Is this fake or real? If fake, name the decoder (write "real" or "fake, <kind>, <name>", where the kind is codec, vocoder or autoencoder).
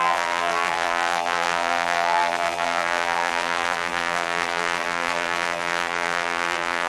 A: fake, vocoder, BigVGAN v2